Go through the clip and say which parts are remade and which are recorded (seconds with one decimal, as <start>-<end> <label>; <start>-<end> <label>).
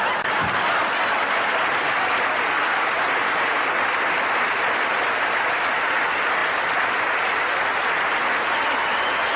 0.0-9.4 recorded